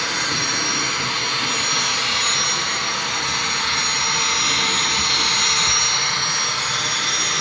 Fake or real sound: real